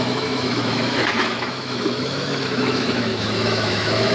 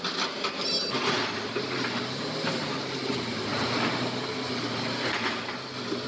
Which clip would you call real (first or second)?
second